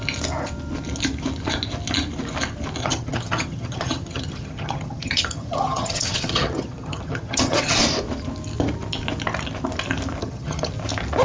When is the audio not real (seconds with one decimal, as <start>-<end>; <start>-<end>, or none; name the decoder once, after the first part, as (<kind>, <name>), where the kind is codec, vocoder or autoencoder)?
2.8-7.8 (vocoder, HiFi-GAN); 10.2-10.7